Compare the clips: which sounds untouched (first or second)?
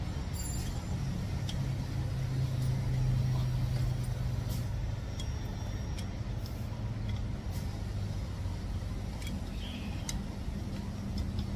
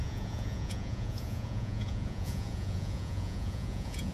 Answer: first